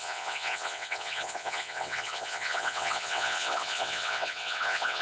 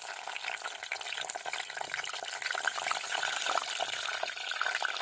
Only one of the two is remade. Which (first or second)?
first